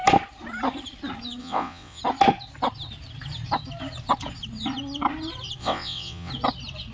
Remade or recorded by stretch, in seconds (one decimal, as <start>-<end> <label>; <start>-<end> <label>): 0.0-1.4 recorded; 1.4-2.0 remade; 2.0-5.6 recorded; 5.6-6.3 remade; 6.3-6.9 recorded